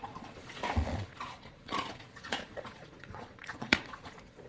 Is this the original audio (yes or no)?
no